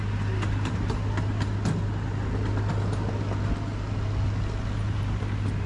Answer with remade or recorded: recorded